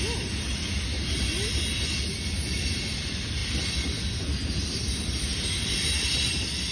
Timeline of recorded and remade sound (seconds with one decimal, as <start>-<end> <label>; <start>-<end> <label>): 0.0-6.7 recorded